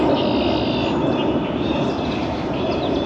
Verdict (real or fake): real